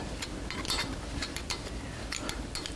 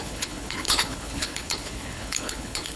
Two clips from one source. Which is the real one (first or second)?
first